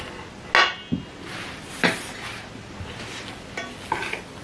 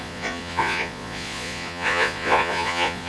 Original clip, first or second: first